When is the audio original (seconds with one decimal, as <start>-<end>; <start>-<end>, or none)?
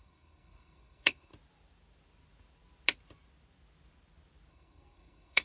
1.3-4.5